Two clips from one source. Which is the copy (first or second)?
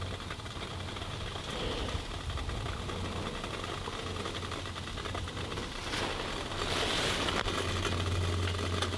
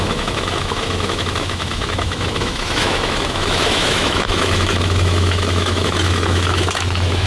second